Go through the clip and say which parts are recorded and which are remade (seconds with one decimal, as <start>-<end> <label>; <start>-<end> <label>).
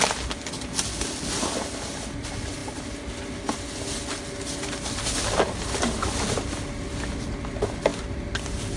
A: 0.0-8.8 recorded